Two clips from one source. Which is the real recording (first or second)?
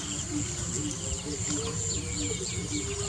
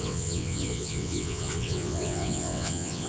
first